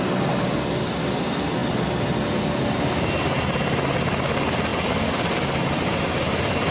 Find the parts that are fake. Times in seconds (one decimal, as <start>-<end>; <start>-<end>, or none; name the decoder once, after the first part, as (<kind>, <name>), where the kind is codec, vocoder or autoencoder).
none